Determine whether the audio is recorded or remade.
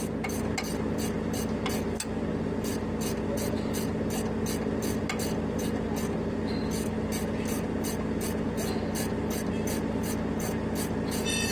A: recorded